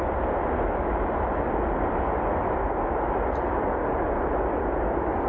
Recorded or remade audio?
recorded